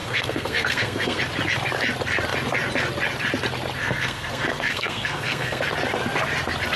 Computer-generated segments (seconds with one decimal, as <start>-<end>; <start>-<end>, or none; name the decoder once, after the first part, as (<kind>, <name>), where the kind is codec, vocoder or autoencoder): 0.0-1.2 (codec, SNAC); 3.8-5.6